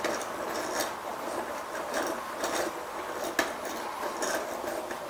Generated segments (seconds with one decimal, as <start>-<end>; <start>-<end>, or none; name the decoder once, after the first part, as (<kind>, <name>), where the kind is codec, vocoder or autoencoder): none